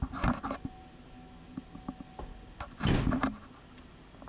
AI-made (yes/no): no